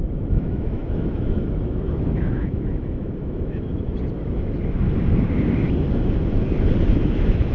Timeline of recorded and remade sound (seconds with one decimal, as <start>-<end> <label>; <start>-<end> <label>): 0.0-3.7 remade; 3.7-6.9 recorded; 6.9-7.5 remade